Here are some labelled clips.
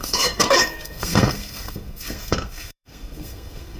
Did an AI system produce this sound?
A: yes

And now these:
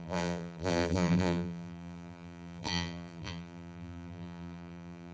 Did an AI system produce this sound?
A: yes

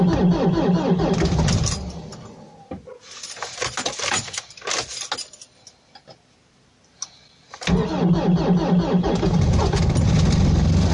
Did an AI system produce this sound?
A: no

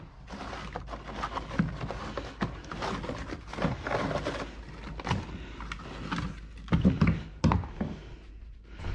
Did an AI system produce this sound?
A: no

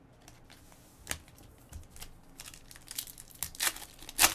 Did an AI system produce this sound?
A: no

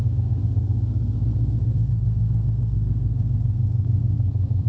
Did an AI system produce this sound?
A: yes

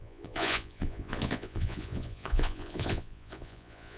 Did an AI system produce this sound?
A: yes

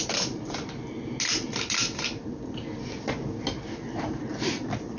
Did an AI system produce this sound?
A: no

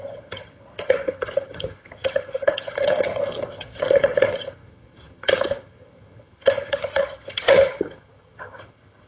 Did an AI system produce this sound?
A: yes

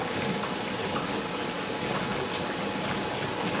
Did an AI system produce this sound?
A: no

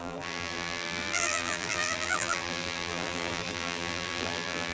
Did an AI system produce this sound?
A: yes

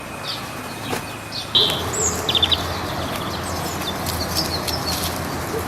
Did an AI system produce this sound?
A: no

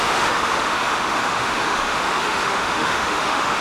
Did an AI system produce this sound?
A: yes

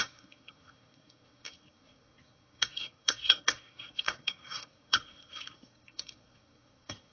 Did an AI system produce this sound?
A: yes